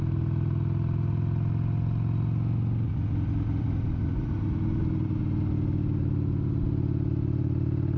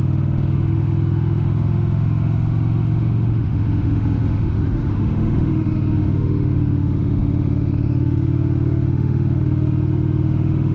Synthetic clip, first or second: second